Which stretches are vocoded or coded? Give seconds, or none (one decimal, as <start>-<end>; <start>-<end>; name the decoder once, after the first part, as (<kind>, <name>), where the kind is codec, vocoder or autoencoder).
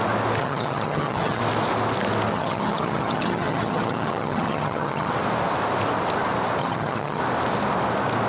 0.4-1.4 (vocoder, HiFi-GAN); 2.3-5.1; 6.6-7.2